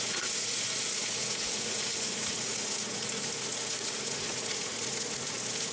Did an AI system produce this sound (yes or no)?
yes